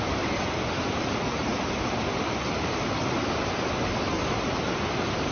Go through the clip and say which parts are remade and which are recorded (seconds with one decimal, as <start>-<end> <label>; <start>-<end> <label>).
0.0-5.3 recorded